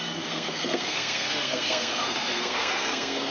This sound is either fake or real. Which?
fake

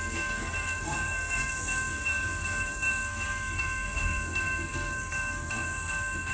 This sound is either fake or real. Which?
fake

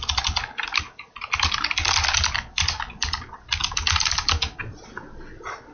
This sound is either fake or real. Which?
real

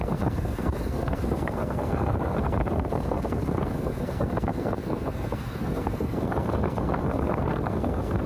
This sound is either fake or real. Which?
fake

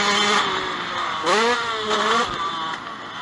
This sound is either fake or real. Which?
real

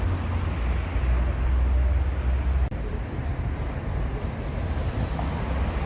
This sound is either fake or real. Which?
real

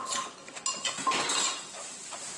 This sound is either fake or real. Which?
real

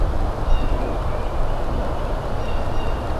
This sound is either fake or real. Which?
real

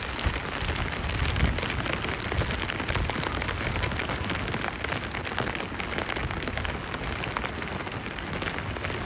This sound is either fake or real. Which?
real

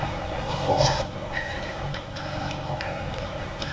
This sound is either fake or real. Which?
fake